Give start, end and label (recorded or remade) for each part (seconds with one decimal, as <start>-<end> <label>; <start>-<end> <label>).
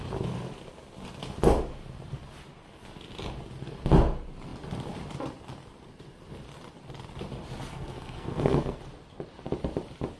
0.0-7.7 recorded; 7.7-8.8 remade; 8.8-10.2 recorded